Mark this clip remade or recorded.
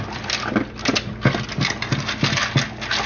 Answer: recorded